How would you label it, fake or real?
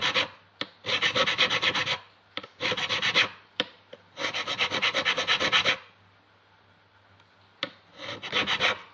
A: real